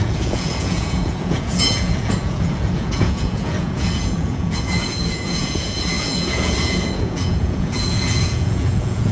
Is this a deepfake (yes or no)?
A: yes